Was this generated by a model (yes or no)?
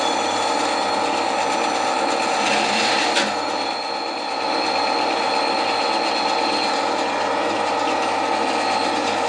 no